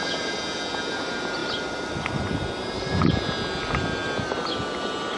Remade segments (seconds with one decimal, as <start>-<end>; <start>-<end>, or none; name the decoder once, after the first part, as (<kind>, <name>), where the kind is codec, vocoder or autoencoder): 1.4-3.1 (vocoder, BigVGAN v2)